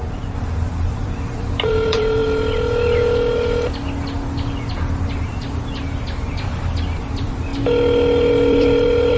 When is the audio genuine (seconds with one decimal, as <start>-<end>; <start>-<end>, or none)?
2.2-6.3; 7.5-8.3